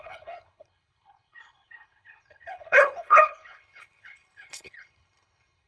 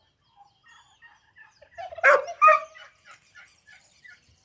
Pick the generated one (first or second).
first